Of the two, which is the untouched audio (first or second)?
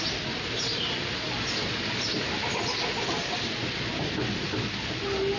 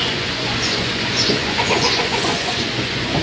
first